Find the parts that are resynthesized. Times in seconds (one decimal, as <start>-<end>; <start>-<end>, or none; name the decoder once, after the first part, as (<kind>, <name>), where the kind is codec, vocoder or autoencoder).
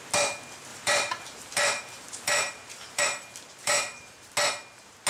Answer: 0.7-3.0 (vocoder, BigVGAN v2); 3.6-4.3